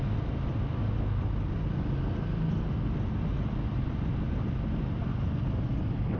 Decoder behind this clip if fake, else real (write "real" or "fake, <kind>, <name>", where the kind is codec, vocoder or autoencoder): real